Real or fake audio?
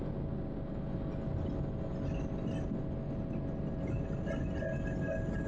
real